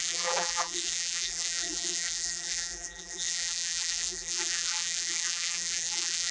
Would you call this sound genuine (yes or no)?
no